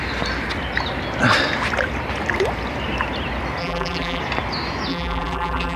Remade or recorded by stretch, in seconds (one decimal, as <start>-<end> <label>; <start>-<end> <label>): 0.0-3.6 recorded; 3.6-4.2 remade; 4.2-4.9 recorded; 4.9-5.8 remade